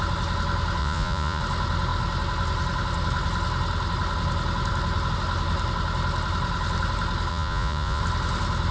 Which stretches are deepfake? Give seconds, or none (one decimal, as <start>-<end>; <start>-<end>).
0.8-1.4; 7.3-8.0